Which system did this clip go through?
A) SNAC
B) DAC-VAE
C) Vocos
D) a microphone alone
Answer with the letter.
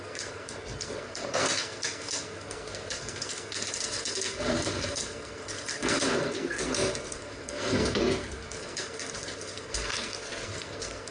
A